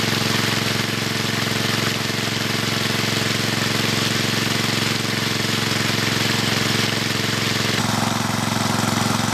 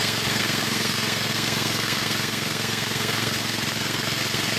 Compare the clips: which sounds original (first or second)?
first